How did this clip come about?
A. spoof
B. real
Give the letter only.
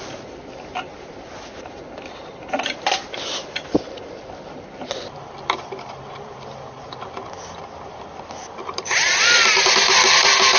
A